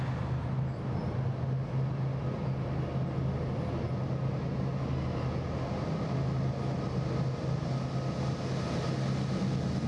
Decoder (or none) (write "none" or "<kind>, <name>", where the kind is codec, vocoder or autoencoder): none